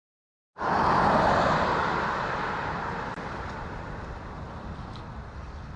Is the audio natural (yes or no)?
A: yes